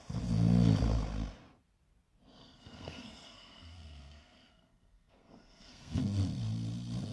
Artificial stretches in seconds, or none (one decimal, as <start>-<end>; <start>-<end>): 2.4-6.0